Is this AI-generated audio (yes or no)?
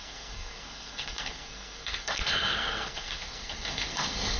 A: yes